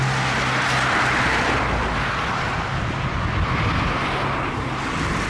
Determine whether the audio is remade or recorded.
recorded